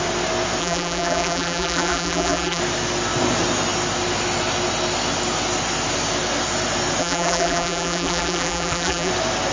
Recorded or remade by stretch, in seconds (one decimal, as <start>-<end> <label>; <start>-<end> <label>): 0.0-0.6 recorded; 0.6-2.6 remade; 2.6-7.0 recorded; 7.0-9.1 remade; 9.1-9.5 recorded